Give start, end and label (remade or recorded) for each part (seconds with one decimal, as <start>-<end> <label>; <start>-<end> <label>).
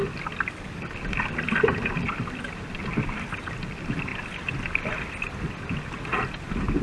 0.0-6.8 recorded